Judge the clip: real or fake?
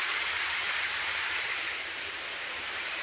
fake